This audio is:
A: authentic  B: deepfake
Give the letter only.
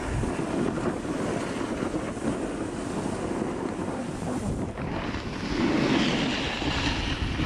A